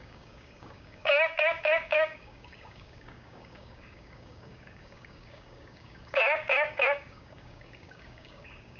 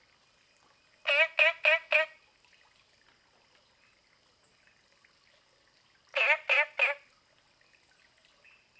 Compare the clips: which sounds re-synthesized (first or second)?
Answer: first